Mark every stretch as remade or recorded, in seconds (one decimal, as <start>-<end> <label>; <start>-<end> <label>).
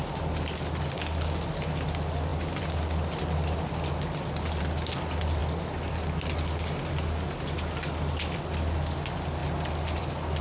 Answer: 0.0-10.4 recorded